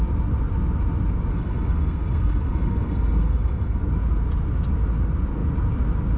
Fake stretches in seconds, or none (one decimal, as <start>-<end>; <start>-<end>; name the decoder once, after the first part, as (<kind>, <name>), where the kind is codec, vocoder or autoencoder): 1.3-3.8 (codec, SNAC)